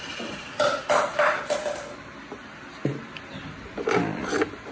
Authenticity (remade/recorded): recorded